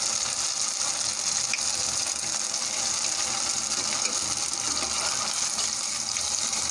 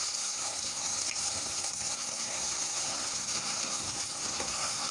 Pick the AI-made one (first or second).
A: second